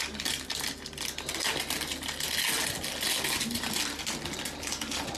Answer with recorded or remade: recorded